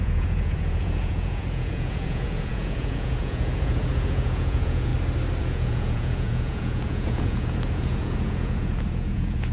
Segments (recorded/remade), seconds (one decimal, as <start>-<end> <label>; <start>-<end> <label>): 0.0-4.9 remade; 4.9-5.4 recorded; 5.4-9.5 remade